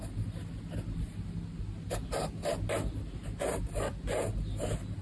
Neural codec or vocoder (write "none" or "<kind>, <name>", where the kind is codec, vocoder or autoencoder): none